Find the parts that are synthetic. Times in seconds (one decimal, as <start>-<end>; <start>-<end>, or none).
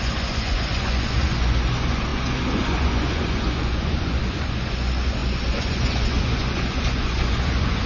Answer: 0.0-7.9